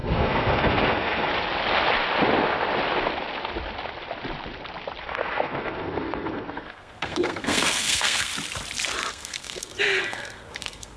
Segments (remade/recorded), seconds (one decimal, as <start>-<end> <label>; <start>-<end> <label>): 0.0-1.3 remade; 1.3-5.0 recorded; 5.0-8.3 remade; 8.3-9.1 recorded; 9.1-11.0 remade